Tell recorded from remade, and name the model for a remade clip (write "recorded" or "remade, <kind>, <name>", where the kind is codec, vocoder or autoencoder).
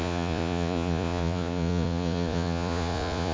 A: remade, vocoder, Vocos